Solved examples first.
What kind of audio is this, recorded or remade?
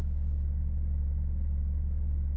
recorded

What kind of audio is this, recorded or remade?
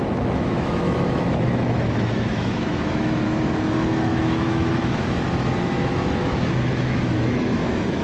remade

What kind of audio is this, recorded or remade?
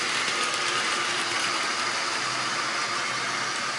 recorded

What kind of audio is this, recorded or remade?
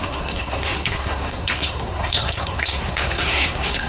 remade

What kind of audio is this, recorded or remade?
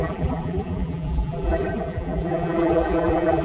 remade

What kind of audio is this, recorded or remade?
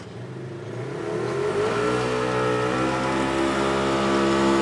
recorded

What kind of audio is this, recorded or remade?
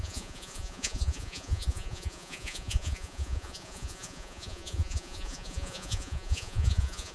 remade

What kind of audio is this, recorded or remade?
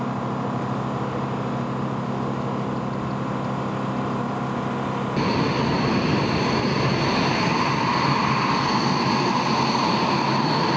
recorded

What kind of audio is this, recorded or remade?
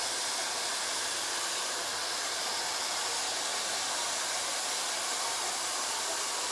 recorded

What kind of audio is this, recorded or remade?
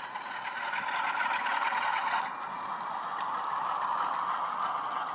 recorded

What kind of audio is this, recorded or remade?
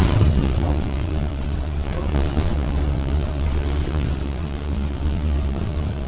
remade